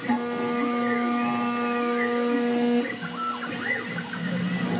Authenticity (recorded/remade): recorded